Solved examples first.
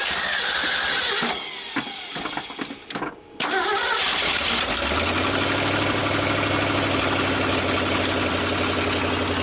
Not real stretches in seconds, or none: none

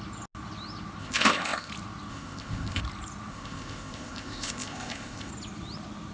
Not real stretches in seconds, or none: 1.0-1.7; 2.1-2.8; 3.3-5.3